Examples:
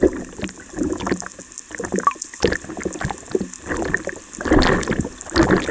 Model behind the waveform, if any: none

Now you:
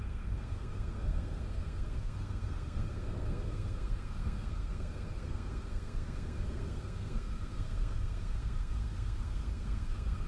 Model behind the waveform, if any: codec, SNAC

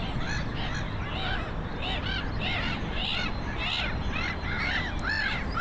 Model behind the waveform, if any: none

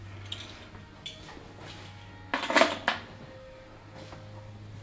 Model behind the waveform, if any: none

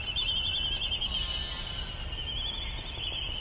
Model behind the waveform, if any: none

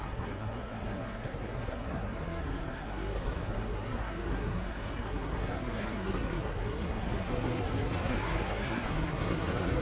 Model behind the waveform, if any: codec, SNAC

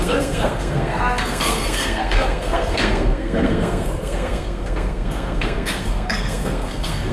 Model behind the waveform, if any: codec, SNAC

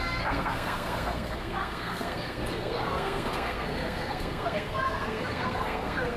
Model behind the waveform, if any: codec, SNAC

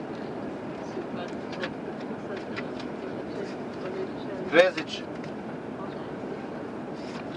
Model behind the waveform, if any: none